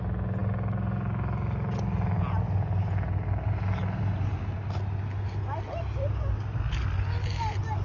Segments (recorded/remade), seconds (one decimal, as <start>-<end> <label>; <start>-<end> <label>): 0.0-7.8 recorded